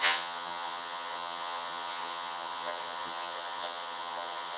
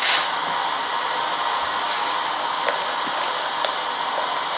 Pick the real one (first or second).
second